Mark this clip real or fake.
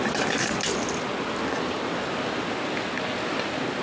real